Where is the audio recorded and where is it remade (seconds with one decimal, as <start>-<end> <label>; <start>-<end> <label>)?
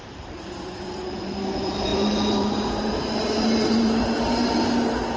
0.0-5.2 remade